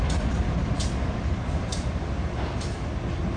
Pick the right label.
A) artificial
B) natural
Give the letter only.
B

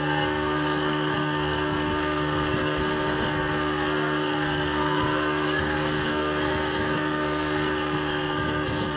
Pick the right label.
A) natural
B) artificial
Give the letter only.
B